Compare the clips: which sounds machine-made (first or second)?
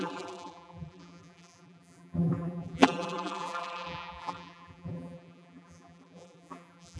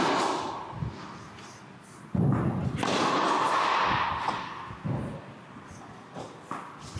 first